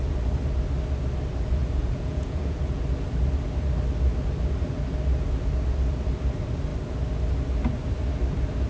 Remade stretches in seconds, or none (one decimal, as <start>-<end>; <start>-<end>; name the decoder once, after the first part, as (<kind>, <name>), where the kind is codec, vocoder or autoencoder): 1.6-2.8 (vocoder, Vocos)